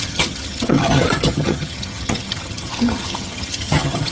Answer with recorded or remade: remade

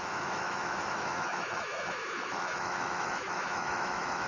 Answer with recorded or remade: remade